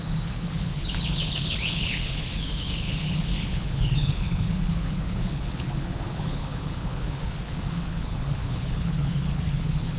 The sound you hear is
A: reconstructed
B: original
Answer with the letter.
A